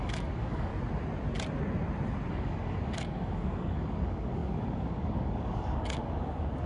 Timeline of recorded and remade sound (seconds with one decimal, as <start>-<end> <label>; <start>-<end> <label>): 0.0-0.7 remade; 0.7-2.3 recorded; 2.3-6.7 remade